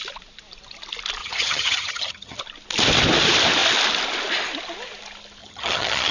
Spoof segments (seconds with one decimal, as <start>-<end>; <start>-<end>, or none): 1.2-2.4; 5.4-6.1